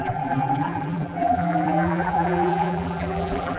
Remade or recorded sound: remade